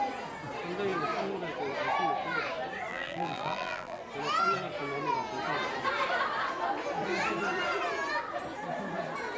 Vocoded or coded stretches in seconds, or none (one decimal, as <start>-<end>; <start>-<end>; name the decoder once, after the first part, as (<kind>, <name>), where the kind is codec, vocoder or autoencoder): 2.9-4.0 (vocoder, BigVGAN v2)